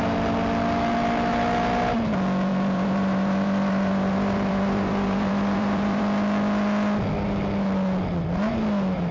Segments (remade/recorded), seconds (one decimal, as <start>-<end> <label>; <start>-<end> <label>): 0.0-2.5 recorded; 2.5-6.0 remade; 6.0-9.1 recorded